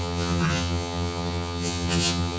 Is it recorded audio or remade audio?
remade